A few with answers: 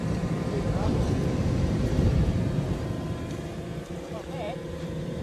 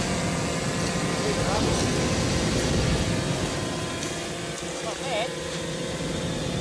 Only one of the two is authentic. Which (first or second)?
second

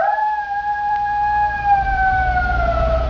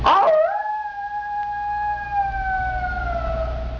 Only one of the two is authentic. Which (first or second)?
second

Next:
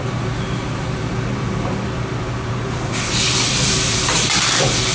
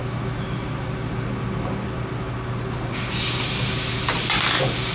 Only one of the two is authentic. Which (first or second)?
second